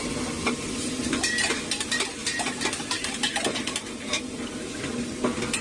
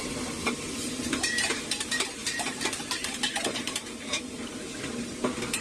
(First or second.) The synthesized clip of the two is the second